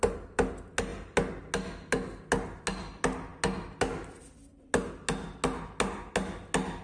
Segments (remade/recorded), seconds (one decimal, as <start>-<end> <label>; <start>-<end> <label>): 0.0-6.8 recorded